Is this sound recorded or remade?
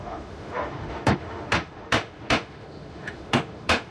remade